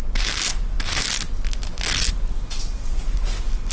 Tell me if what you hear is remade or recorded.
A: recorded